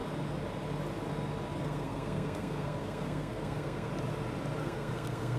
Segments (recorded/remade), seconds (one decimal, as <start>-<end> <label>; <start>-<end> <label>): 0.0-1.6 recorded; 1.6-3.9 remade; 3.9-4.6 recorded; 4.6-5.4 remade